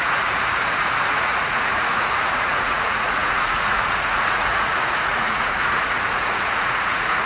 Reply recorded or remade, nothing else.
remade